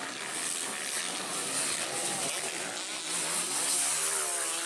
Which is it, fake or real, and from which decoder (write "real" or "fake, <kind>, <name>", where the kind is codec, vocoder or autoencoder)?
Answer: real